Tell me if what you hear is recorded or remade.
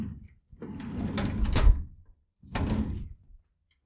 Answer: recorded